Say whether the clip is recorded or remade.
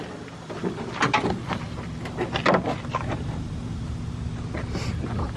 recorded